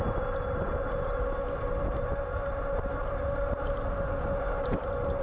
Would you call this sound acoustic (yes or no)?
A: yes